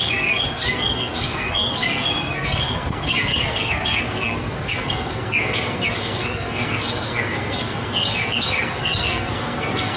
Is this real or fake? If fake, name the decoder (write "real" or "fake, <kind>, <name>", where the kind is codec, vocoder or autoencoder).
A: fake, codec, SNAC